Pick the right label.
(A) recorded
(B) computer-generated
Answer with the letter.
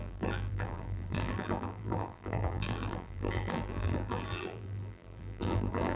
B